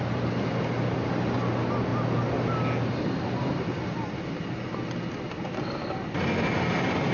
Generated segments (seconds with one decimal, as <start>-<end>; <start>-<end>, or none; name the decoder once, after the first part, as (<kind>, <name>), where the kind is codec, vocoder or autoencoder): none